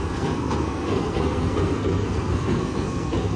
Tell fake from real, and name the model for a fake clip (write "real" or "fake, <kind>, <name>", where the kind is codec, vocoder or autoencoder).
fake, codec, SNAC